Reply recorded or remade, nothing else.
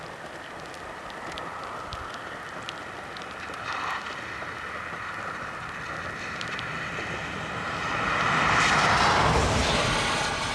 recorded